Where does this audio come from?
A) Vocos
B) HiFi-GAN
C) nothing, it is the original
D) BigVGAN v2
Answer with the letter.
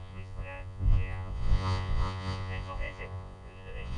A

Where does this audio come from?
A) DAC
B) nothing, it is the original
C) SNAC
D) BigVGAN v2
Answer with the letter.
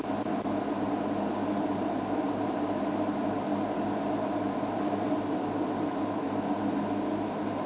B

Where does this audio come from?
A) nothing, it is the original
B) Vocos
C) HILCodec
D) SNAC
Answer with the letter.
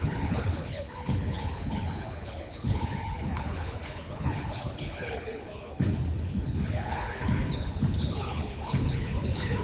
C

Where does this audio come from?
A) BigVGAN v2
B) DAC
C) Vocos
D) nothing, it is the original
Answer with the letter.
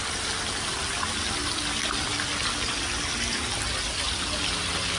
D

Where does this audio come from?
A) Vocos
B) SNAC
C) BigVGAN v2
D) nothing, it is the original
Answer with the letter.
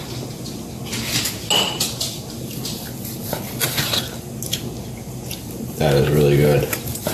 D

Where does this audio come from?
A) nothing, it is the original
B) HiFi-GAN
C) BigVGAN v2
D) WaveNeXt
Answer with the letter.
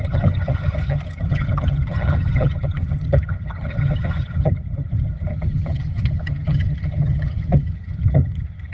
B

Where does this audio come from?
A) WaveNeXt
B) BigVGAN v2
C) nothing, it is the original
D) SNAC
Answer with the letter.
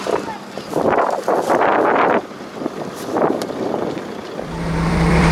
B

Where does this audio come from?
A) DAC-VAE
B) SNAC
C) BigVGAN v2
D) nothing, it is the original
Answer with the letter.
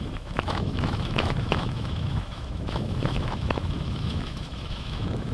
A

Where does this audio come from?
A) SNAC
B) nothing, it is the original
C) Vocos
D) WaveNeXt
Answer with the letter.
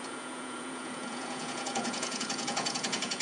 C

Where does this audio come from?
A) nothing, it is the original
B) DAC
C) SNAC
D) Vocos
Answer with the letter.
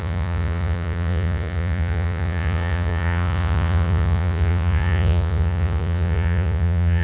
D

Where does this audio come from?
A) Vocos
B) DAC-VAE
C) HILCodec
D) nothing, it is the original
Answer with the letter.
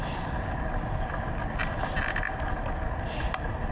D